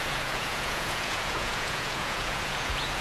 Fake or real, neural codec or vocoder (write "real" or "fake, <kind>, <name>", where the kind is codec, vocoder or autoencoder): fake, vocoder, Vocos